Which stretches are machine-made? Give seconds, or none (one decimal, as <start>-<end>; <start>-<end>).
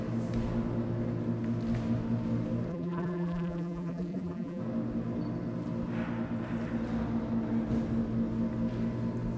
2.7-4.6